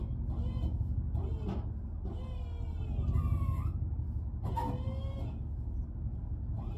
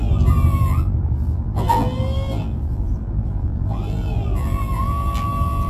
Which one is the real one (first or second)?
first